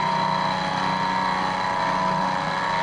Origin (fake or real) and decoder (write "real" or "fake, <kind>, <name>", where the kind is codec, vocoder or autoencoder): real